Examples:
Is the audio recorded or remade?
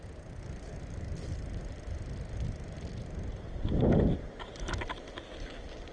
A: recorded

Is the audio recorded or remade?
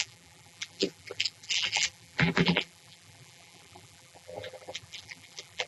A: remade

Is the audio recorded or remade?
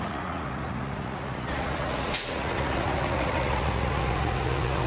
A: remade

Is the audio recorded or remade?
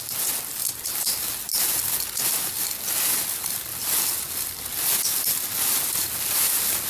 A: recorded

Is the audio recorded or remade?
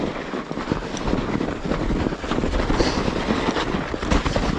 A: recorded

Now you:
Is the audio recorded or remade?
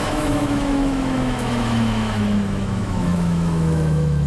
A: remade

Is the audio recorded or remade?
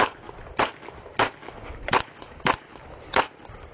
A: recorded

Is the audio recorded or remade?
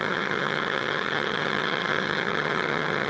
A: remade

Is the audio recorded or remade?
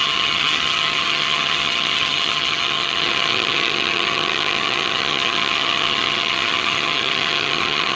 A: remade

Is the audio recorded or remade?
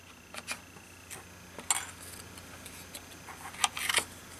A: recorded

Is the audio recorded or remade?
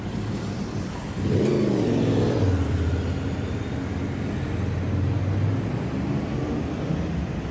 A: recorded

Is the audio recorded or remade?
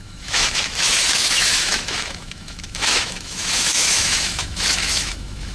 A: remade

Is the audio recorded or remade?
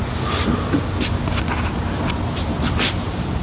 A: recorded